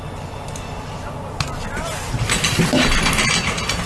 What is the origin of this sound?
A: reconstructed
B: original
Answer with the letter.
B